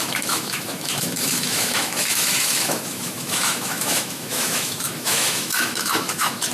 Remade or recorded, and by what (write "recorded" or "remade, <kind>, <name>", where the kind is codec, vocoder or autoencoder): remade, autoencoder, DAC-VAE